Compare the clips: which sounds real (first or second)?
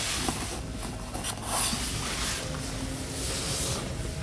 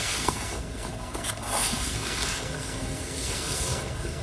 first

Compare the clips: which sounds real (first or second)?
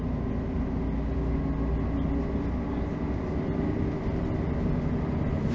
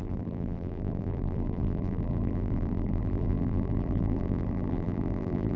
first